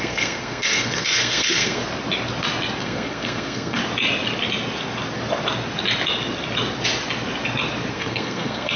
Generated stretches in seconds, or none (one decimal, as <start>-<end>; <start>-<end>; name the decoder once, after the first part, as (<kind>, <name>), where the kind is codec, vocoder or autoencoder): 0.0-1.8 (codec, SNAC); 2.8-3.8; 7.9-8.8